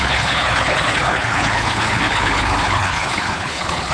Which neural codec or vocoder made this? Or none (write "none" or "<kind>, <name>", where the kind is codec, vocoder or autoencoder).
codec, HILCodec